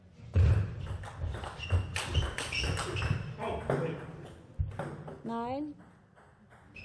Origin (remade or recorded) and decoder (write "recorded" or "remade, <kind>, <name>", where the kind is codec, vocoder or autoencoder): recorded